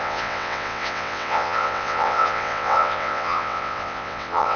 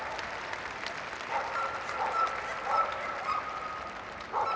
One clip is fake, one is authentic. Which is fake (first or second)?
first